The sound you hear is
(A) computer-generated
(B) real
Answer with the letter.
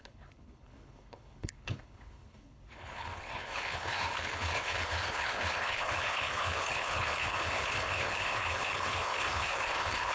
A